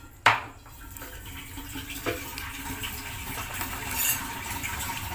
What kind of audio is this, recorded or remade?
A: recorded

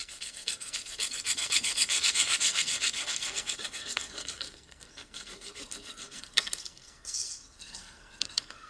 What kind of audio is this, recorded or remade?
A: remade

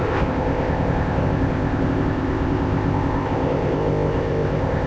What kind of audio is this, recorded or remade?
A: remade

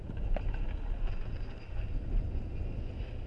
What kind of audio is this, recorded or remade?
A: recorded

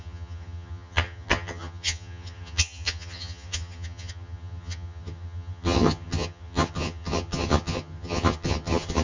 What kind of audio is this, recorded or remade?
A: remade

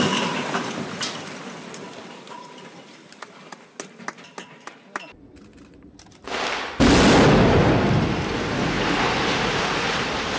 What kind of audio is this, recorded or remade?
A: recorded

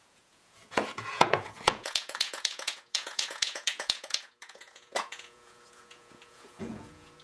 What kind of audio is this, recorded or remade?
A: remade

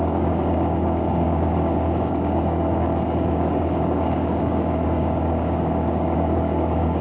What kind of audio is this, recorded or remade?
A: remade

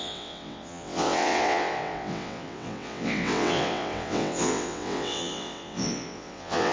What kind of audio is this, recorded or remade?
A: remade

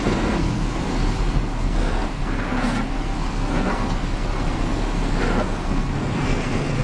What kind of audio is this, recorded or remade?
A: remade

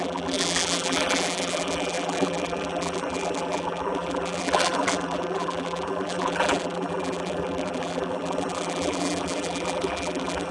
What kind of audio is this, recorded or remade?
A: remade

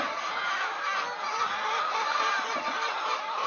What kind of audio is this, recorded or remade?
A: remade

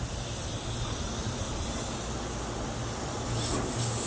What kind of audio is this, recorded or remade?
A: recorded